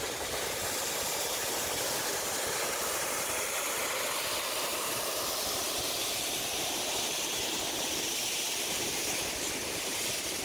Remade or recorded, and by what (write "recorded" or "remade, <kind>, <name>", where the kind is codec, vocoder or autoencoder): remade, vocoder, BigVGAN v2